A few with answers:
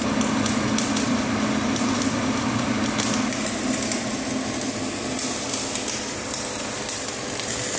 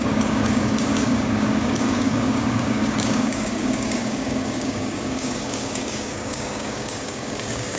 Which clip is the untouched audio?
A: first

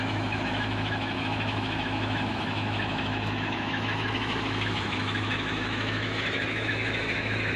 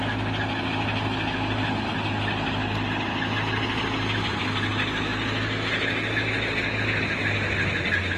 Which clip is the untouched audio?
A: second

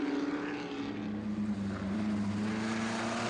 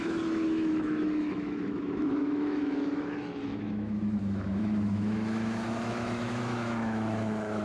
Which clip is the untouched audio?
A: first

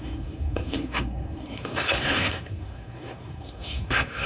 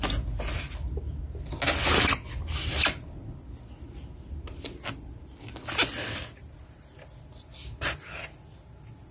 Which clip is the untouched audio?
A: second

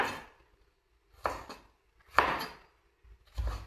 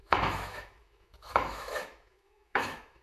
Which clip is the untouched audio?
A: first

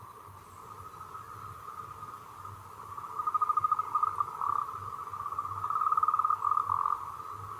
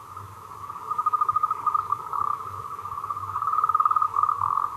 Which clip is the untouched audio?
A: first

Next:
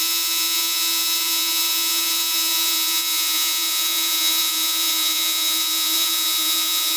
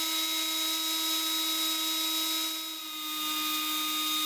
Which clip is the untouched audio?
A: second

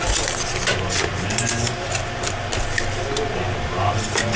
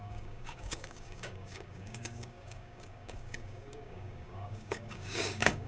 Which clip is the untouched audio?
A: first